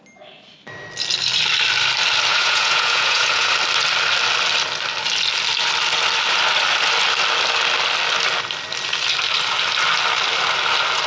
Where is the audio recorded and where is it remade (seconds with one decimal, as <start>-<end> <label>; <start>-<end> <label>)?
0.0-2.3 recorded; 2.3-3.5 remade; 3.5-11.1 recorded